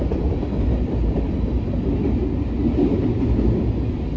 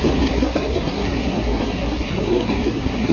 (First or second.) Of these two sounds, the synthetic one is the second